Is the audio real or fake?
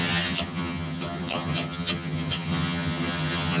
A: fake